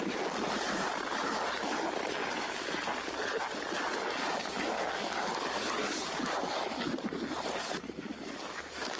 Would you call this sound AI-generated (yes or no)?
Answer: no